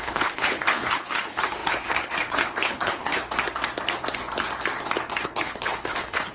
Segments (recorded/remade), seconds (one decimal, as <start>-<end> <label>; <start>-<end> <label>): 0.0-3.2 remade; 3.2-5.2 recorded; 5.2-6.3 remade